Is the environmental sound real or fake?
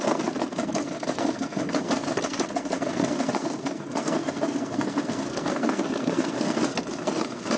fake